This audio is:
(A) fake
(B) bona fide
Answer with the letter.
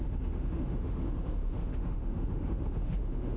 A